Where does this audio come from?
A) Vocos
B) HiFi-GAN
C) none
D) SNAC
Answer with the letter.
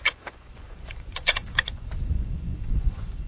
A